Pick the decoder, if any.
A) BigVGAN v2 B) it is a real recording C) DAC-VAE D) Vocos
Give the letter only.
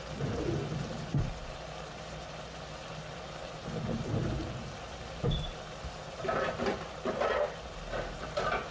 B